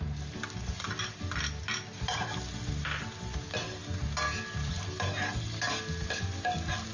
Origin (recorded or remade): recorded